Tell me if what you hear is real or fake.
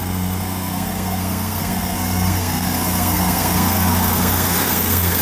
fake